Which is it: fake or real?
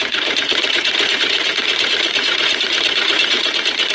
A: fake